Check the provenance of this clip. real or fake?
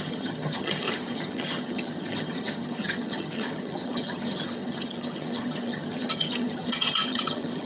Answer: fake